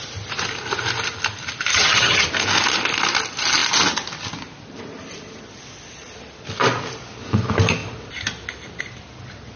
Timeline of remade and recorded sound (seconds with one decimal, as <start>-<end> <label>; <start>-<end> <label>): 0.0-1.7 recorded; 1.7-2.3 remade; 2.3-9.6 recorded